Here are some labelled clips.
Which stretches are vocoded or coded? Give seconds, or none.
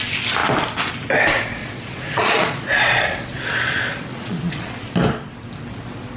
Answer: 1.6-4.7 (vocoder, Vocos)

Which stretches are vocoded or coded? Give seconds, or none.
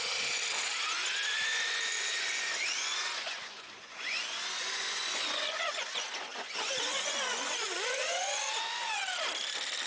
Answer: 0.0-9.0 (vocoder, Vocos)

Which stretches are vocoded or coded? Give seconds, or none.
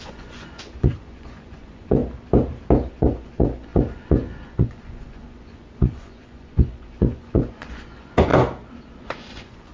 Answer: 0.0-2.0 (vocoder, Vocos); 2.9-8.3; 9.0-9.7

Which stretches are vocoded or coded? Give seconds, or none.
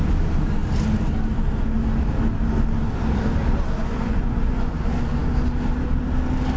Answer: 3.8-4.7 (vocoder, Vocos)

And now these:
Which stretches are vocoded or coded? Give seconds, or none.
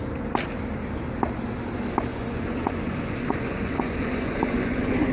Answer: 2.1-5.1 (vocoder, Vocos)